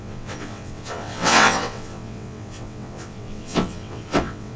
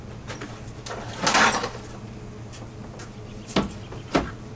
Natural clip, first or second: second